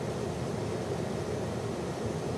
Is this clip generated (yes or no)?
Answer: no